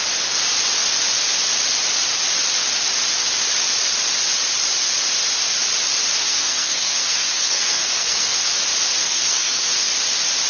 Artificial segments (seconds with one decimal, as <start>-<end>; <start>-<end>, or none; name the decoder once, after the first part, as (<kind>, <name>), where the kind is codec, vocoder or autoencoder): 6.2-8.6 (codec, SNAC); 9.0-9.9